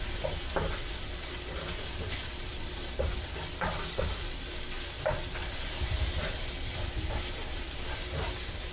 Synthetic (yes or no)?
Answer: yes